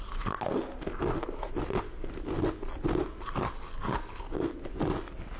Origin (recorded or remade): recorded